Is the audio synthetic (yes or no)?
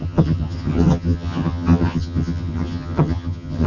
yes